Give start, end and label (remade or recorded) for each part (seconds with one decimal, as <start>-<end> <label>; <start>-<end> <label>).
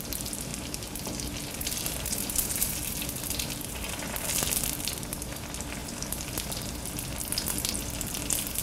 0.0-8.6 recorded